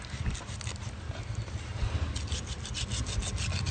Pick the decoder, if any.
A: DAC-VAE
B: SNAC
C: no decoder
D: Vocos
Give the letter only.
C